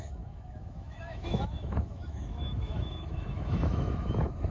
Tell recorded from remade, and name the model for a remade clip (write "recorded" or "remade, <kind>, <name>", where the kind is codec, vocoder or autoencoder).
remade, autoencoder, DAC-VAE